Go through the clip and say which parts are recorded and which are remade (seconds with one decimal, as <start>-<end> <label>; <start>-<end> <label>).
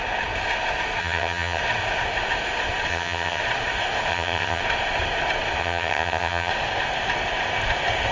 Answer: 0.0-1.0 recorded; 1.0-1.6 remade; 1.6-2.9 recorded; 2.9-3.4 remade; 3.4-4.1 recorded; 4.1-4.6 remade; 4.6-5.6 recorded; 5.6-6.5 remade; 6.5-8.1 recorded